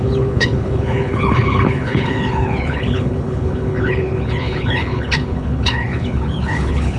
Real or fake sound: fake